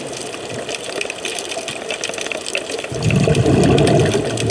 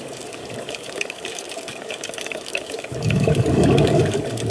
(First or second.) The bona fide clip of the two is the first